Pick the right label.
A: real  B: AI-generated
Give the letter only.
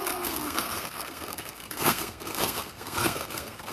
B